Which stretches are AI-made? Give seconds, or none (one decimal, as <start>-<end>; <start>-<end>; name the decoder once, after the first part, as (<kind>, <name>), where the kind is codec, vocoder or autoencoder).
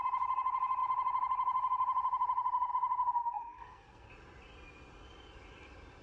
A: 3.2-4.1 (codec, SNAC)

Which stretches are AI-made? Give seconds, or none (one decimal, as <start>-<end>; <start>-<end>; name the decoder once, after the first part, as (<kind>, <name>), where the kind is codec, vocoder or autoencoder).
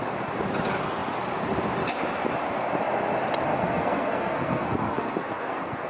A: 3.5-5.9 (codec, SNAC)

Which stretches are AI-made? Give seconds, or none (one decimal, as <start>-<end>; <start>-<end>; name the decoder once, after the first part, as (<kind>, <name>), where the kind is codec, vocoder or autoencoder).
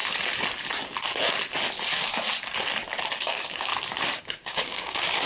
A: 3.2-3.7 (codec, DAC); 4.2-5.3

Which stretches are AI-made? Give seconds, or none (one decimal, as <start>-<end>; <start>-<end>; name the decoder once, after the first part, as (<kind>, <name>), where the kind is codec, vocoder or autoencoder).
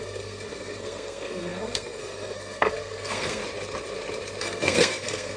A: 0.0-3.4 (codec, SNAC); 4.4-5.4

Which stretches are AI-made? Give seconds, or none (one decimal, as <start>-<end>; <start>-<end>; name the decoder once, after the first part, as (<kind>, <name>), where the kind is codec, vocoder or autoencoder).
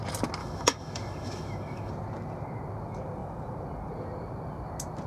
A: 0.4-1.9 (autoencoder, DAC-VAE)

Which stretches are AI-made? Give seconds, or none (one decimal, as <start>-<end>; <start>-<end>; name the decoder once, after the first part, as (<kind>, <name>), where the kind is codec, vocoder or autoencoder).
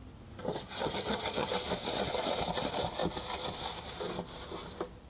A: 0.5-1.5 (vocoder, HiFi-GAN)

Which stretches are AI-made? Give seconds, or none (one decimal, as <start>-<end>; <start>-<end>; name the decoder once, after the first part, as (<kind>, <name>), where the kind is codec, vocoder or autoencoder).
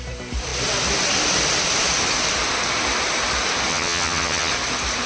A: 3.7-4.5 (vocoder, HiFi-GAN)